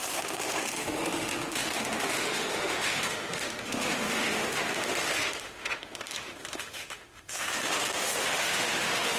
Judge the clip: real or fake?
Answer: fake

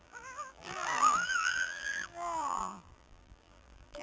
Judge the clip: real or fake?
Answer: fake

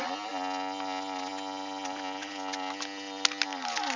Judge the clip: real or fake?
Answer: real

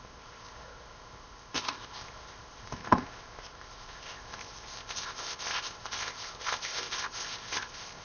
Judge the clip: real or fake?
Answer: fake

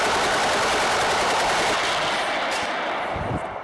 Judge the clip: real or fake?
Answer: real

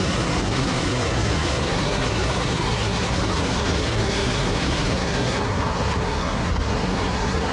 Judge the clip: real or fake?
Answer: fake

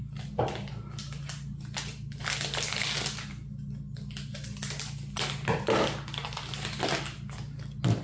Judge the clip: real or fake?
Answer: real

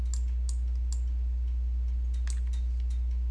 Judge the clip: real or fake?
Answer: real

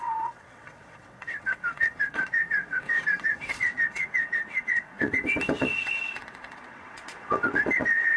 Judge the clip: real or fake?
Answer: fake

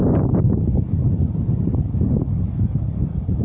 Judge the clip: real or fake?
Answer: fake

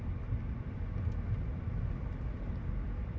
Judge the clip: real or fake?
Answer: real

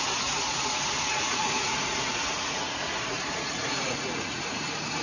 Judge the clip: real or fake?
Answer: fake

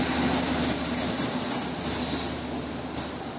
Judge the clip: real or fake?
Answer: real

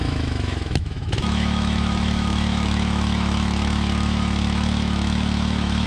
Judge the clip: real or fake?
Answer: fake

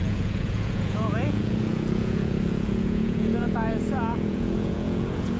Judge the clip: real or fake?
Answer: fake